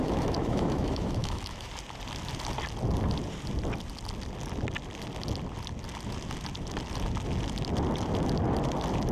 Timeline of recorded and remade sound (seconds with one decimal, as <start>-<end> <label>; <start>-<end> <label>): 0.0-1.7 remade; 1.7-9.1 recorded

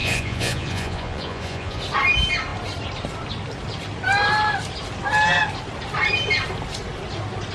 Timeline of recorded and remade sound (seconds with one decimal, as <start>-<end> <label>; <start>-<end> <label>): 0.0-1.8 remade; 1.8-7.5 recorded

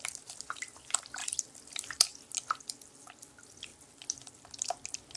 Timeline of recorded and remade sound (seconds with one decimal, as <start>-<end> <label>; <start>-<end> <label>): 0.0-1.2 recorded; 1.2-2.2 remade; 2.2-5.2 recorded

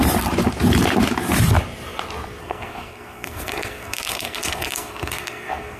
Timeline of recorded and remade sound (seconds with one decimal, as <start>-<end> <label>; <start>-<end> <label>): 0.0-2.4 recorded; 2.4-5.8 remade

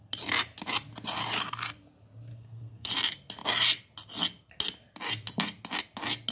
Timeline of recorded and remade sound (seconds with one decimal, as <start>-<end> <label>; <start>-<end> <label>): 0.0-2.3 recorded; 2.3-2.9 remade; 2.9-6.3 recorded

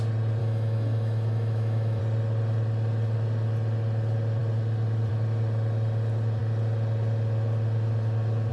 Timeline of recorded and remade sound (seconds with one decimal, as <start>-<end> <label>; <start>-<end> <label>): 0.0-0.4 recorded; 0.4-2.0 remade; 2.0-8.5 recorded

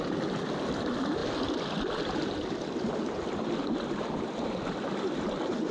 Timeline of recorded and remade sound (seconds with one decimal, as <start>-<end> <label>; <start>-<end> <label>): 0.0-5.7 remade

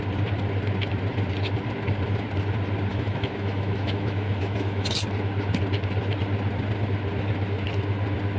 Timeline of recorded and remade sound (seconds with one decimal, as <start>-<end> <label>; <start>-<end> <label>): 0.0-2.9 recorded; 2.9-4.9 remade; 4.9-8.4 recorded